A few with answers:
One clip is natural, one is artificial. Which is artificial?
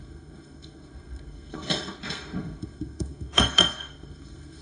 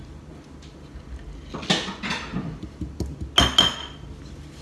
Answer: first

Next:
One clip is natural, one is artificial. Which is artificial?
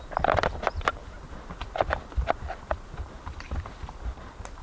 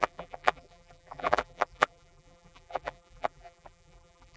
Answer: second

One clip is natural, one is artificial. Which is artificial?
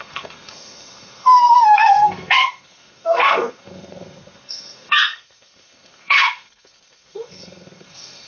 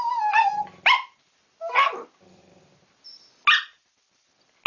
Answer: first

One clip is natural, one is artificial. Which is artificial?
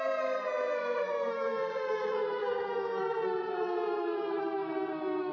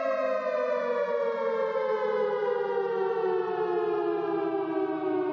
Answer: first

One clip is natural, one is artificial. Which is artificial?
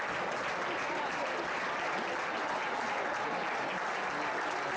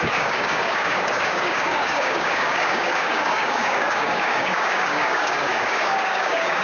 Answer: second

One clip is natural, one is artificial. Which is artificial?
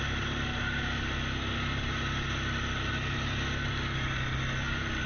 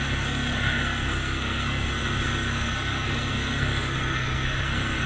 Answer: second